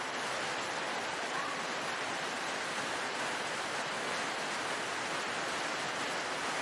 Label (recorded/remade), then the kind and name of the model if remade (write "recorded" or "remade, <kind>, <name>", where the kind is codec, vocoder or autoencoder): recorded